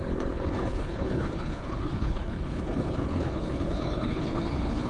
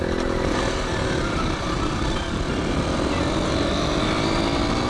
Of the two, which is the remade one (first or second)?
first